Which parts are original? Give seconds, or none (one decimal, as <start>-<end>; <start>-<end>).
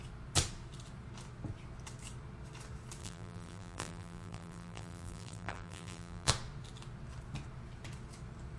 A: 0.0-3.0; 6.3-8.6